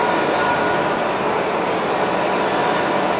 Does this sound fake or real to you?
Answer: real